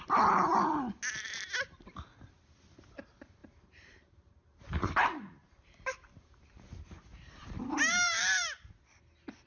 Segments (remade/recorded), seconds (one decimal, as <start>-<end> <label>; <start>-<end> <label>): 0.0-3.4 recorded; 3.4-8.7 remade; 8.7-9.5 recorded